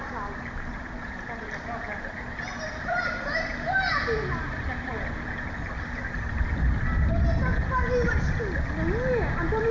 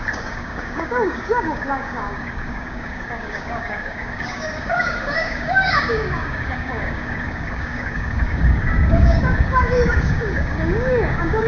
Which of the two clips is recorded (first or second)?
first